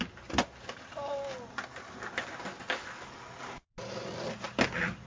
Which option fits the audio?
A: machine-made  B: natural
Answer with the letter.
B